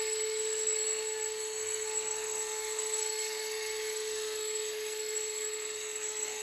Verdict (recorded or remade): remade